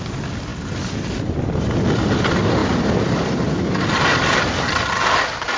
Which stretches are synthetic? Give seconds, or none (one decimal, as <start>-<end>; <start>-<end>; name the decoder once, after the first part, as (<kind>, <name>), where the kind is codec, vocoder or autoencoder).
none